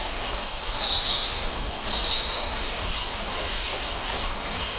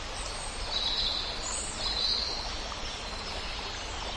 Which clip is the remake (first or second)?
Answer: first